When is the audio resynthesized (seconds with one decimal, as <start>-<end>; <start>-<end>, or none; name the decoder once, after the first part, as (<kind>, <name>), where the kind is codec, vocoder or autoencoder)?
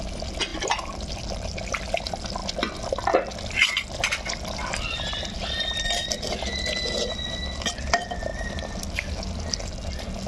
0.5-2.0 (vocoder, BigVGAN v2); 2.4-5.8; 8.3-8.8